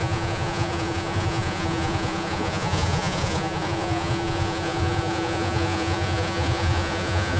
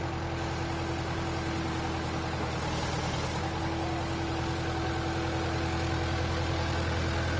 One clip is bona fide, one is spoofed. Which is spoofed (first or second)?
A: first